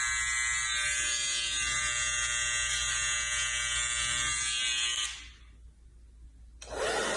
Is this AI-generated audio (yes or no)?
no